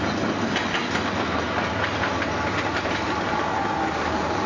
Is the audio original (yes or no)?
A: yes